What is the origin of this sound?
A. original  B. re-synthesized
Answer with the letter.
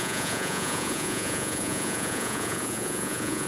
B